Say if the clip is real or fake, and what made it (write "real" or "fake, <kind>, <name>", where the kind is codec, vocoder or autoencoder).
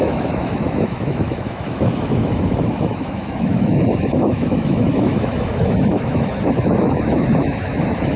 fake, autoencoder, DAC-VAE